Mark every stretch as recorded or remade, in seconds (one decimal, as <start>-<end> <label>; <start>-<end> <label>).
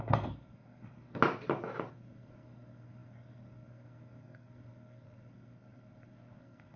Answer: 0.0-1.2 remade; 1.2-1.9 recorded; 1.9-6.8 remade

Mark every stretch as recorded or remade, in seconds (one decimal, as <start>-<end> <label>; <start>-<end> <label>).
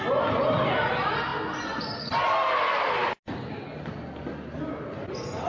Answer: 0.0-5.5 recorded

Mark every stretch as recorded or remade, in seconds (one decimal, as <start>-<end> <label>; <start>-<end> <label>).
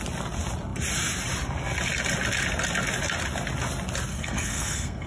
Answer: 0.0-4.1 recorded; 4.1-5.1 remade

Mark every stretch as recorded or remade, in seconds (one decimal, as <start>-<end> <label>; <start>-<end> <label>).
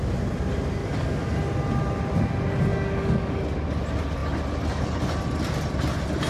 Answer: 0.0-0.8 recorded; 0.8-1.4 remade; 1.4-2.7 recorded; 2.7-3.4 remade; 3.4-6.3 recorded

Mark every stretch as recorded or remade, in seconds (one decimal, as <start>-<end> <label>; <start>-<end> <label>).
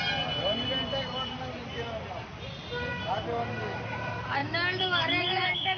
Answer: 0.0-4.4 recorded; 4.4-5.8 remade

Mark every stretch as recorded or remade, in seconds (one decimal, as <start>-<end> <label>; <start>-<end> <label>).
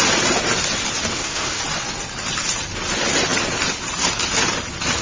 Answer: 0.0-1.1 recorded; 1.1-1.6 remade; 1.6-5.0 recorded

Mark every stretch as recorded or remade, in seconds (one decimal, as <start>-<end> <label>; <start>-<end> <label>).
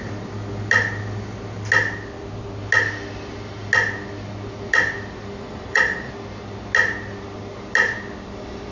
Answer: 0.0-5.4 recorded; 5.4-6.1 remade; 6.1-8.7 recorded